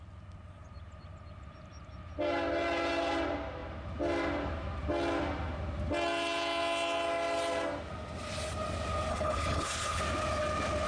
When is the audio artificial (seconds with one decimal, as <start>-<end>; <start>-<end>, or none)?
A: 9.1-10.0